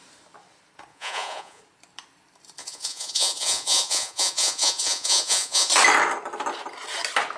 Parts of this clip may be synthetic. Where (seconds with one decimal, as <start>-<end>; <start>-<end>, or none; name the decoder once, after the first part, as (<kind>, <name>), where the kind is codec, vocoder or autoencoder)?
0.9-1.6 (vocoder, Vocos); 2.6-5.7